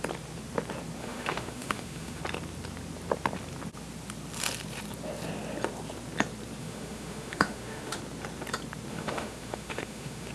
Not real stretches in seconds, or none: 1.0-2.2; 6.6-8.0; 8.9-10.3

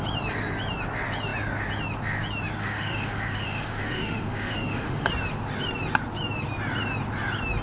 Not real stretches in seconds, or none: 2.6-5.1

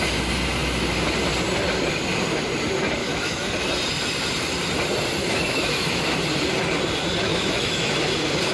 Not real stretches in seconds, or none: 3.0-3.5; 5.2-6.0; 7.3-7.9